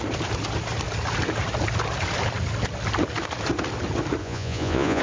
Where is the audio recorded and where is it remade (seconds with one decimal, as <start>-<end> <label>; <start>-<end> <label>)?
0.0-4.2 recorded; 4.2-5.0 remade

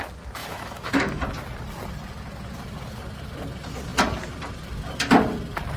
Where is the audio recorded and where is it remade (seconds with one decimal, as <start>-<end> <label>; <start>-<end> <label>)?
0.0-0.4 recorded; 0.4-1.2 remade; 1.2-5.8 recorded

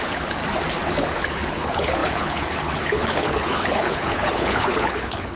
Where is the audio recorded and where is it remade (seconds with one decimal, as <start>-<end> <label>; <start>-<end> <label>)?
0.0-0.4 remade; 0.4-0.9 recorded; 0.9-5.4 remade

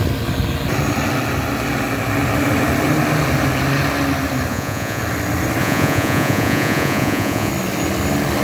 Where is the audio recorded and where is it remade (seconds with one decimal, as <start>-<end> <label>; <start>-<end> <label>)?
0.0-4.5 recorded; 4.5-5.0 remade; 5.0-5.6 recorded; 5.6-7.5 remade; 7.5-8.4 recorded